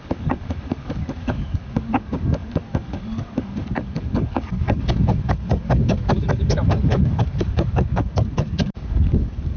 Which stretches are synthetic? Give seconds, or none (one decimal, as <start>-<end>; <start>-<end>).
0.0-9.6